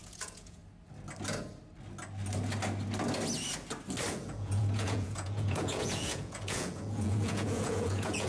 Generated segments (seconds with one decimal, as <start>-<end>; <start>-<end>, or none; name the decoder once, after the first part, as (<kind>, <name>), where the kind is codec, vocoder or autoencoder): 0.0-0.6 (vocoder, Vocos); 4.1-8.3